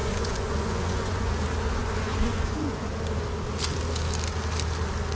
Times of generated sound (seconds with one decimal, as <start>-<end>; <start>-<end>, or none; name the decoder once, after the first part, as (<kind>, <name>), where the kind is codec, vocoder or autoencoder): 0.0-1.3 (vocoder, Vocos); 1.8-2.9